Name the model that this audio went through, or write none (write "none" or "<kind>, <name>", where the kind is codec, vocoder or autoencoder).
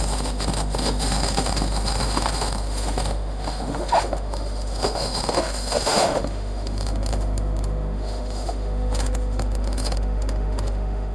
autoencoder, DAC-VAE